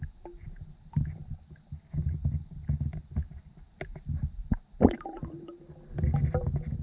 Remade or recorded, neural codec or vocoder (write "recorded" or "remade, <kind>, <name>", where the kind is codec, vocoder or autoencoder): recorded